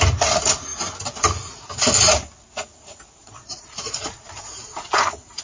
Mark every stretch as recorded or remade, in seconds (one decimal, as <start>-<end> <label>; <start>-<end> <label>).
0.0-3.2 recorded; 3.2-4.9 remade; 4.9-5.4 recorded